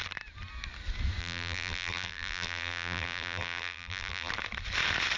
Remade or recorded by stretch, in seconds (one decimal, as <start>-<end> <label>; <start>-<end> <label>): 0.0-1.2 recorded; 1.2-4.3 remade; 4.3-5.2 recorded